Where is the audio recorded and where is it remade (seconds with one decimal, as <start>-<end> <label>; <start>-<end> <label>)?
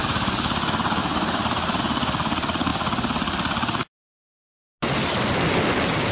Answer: 0.0-1.0 recorded; 1.0-1.8 remade; 1.8-6.1 recorded